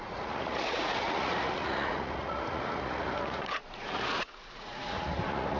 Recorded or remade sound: remade